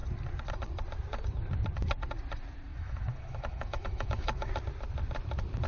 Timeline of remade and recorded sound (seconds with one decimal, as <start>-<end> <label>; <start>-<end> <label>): 0.0-2.7 recorded; 2.7-4.5 remade; 4.5-5.7 recorded